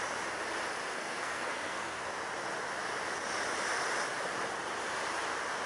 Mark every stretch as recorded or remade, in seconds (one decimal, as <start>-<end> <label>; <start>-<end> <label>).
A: 0.0-0.9 recorded; 0.9-2.1 remade; 2.1-5.7 recorded